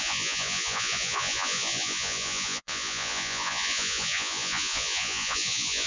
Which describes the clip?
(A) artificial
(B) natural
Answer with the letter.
A